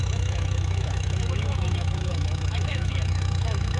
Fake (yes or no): yes